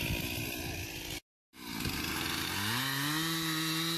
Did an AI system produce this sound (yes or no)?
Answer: no